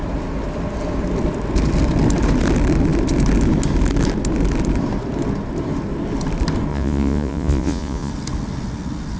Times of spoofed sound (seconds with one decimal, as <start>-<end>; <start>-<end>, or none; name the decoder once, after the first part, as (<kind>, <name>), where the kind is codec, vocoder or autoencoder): 6.7-8.1 (vocoder, Vocos)